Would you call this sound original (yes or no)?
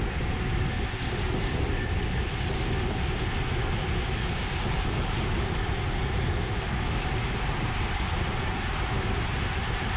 yes